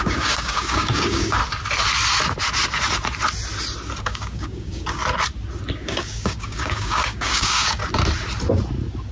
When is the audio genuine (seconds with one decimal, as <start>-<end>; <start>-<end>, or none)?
1.4-4.0; 5.0-5.7; 7.8-9.1